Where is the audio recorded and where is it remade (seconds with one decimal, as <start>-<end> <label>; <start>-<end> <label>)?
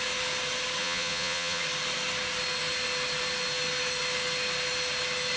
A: 0.0-0.8 recorded; 0.8-1.6 remade; 1.6-5.4 recorded